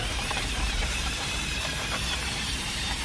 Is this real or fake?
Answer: fake